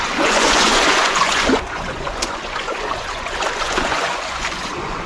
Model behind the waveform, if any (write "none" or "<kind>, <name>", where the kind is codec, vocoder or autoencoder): vocoder, Vocos